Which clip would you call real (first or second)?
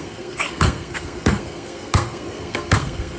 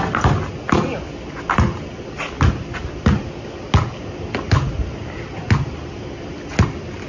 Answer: second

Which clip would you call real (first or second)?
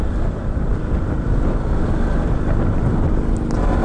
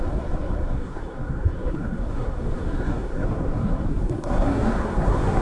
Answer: first